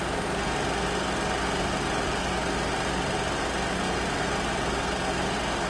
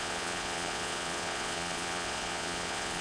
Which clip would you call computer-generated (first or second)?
second